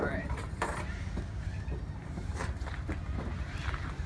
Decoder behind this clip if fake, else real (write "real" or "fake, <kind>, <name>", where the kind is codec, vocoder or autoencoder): fake, vocoder, BigVGAN v2